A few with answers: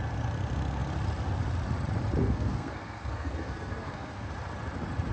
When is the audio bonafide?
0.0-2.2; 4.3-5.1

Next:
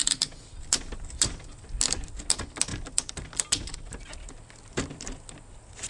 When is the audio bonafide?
0.0-5.9

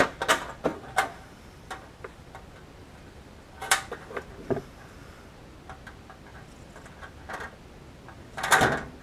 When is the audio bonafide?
0.0-0.7; 2.2-2.8; 4.3-6.3; 6.9-9.0